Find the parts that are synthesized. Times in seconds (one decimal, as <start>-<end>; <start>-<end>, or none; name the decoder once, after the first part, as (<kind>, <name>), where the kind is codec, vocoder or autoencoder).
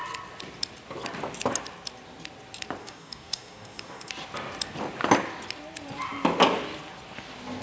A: 2.8-4.1 (codec, DAC)